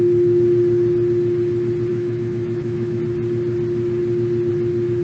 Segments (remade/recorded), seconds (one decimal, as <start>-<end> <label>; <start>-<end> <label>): 0.0-1.9 recorded; 1.9-3.0 remade; 3.0-5.0 recorded